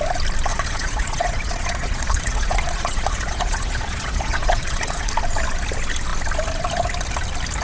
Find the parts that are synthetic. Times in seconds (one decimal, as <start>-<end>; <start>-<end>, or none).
0.5-5.1